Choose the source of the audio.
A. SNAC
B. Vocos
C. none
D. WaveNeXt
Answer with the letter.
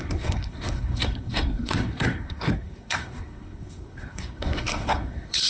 A